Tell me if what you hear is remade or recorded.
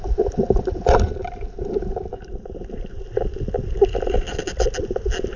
recorded